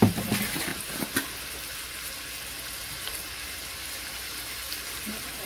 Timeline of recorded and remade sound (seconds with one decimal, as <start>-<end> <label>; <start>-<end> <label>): 0.0-5.5 recorded